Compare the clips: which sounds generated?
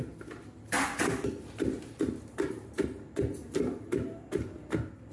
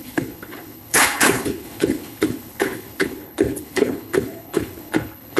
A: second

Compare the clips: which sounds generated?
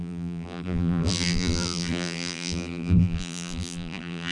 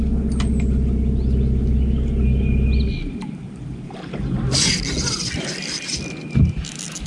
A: first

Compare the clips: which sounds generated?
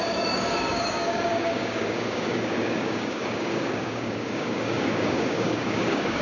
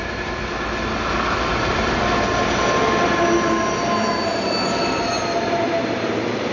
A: first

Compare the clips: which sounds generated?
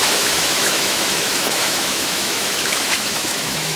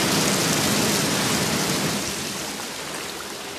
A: first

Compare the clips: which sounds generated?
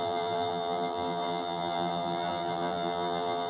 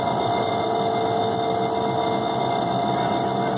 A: first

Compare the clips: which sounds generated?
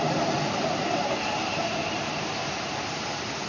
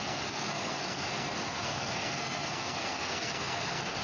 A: second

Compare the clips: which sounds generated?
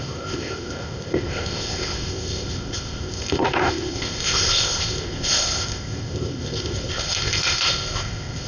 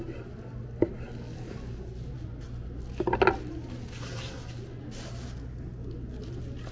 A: first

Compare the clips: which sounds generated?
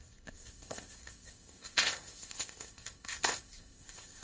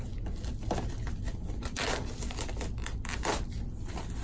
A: first